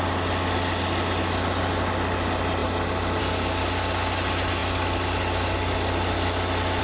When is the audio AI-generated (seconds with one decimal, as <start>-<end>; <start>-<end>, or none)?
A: none